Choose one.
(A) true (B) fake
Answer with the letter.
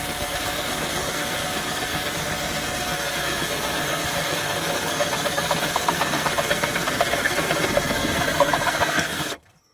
B